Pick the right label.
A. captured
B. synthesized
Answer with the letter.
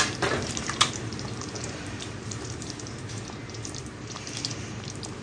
B